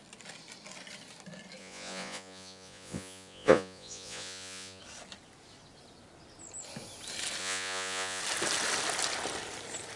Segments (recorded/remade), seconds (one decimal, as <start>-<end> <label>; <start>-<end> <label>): 0.0-1.6 recorded; 1.6-4.8 remade; 4.8-7.4 recorded; 7.4-8.2 remade; 8.2-10.0 recorded